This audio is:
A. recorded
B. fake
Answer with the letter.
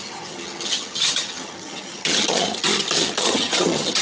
B